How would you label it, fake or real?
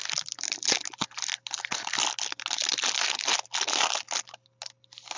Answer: real